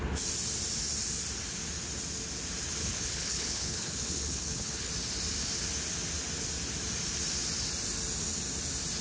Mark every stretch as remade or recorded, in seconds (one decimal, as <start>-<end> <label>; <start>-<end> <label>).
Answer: 0.0-2.8 recorded; 2.8-4.9 remade; 4.9-9.0 recorded